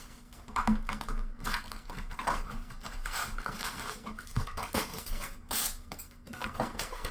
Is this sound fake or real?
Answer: fake